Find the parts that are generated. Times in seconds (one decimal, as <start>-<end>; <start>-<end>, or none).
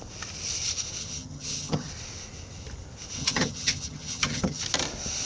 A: 1.0-1.9; 3.2-4.6